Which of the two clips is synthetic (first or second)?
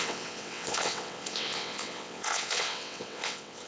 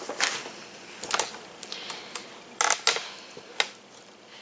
first